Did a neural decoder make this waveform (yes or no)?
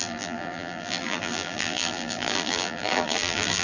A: yes